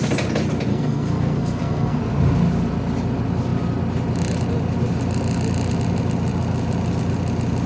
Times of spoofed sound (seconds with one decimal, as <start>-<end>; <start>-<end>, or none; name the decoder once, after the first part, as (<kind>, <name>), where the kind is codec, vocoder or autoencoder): 0.7-2.0 (codec, SNAC)